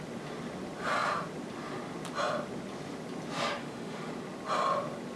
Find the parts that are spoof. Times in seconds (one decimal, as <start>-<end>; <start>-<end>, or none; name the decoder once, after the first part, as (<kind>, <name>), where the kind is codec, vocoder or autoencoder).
3.6-4.1 (autoencoder, DAC-VAE)